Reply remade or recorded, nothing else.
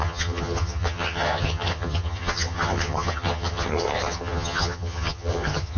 remade